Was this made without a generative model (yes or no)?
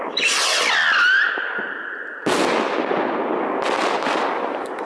yes